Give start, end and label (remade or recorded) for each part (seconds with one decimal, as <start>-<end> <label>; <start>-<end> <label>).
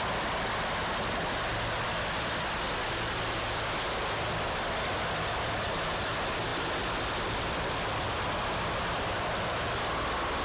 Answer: 0.0-10.4 recorded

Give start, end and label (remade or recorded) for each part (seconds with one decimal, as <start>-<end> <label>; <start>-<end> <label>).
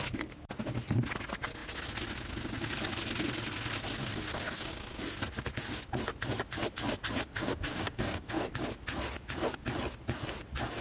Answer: 0.0-4.0 recorded; 4.0-4.7 remade; 4.7-7.3 recorded; 7.3-8.5 remade; 8.5-10.8 recorded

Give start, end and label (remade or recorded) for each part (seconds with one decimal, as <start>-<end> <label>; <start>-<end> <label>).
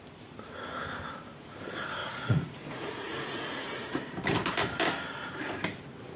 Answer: 0.0-2.0 recorded; 2.0-3.9 remade; 3.9-6.2 recorded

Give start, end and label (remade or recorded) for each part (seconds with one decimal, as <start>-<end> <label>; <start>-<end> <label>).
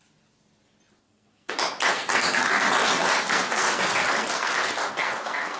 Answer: 0.0-1.0 recorded; 1.0-1.5 remade; 1.5-1.9 recorded; 1.9-5.6 remade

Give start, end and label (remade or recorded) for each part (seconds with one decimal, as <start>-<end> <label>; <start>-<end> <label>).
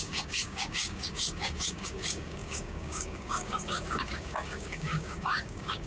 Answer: 0.0-5.9 remade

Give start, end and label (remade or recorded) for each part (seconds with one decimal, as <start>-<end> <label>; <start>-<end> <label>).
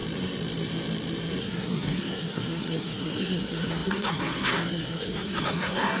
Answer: 0.0-1.4 recorded; 1.4-6.0 remade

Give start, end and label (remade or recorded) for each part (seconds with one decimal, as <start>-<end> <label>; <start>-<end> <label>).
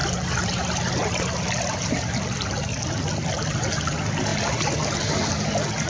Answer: 0.0-5.9 recorded